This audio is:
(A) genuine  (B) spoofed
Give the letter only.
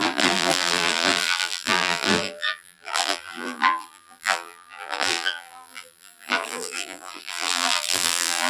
B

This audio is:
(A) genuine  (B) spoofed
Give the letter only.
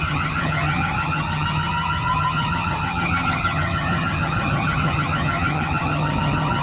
B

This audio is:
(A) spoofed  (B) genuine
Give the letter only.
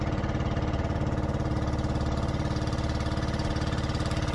B